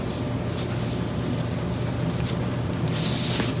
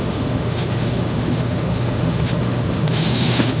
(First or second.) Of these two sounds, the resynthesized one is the second